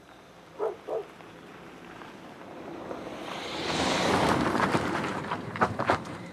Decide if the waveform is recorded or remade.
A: remade